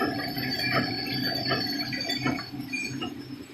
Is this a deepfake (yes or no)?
no